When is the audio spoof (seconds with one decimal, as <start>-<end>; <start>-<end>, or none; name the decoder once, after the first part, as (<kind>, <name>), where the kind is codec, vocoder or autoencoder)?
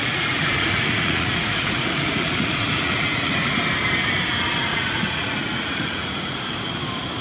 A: 0.0-3.6 (vocoder, Vocos); 4.7-6.4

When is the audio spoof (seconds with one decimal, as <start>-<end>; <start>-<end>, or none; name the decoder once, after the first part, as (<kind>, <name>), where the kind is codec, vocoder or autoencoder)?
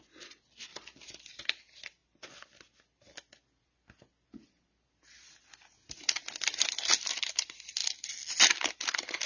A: none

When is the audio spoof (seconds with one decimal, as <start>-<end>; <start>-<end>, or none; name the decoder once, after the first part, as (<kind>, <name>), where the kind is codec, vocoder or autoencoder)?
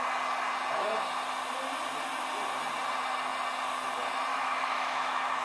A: 4.3-5.4 (autoencoder, DAC-VAE)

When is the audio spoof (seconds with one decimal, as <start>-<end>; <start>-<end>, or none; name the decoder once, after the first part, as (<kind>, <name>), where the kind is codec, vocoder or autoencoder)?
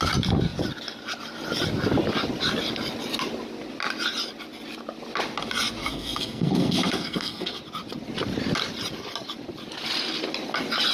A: 5.8-7.6 (codec, SNAC)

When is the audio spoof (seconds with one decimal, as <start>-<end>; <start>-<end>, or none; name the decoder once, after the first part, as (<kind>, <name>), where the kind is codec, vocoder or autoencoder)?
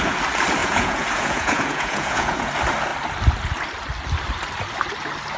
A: 0.6-2.5 (vocoder, Vocos)